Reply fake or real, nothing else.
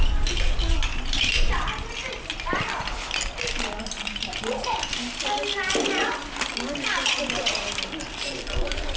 real